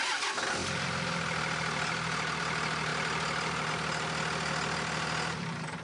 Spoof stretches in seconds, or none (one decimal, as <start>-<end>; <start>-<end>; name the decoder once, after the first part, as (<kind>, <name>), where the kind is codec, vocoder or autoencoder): none